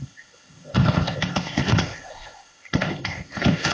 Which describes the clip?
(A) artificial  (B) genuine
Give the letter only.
A